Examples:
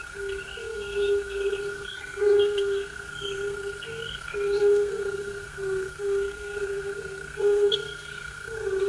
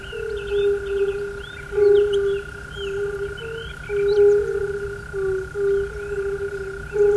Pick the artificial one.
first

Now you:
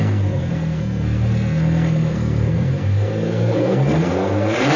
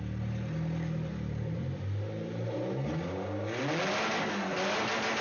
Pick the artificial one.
first